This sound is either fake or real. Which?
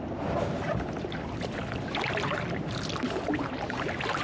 real